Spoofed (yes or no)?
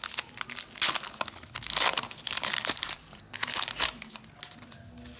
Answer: no